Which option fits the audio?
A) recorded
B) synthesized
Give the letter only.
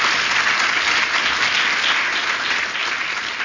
A